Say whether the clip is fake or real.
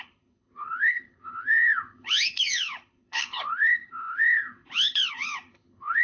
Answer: fake